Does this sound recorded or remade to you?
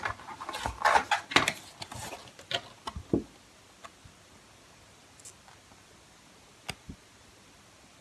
recorded